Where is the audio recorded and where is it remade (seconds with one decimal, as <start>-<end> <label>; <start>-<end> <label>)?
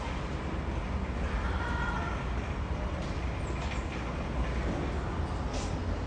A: 0.0-6.1 recorded